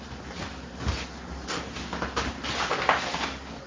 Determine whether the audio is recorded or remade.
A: recorded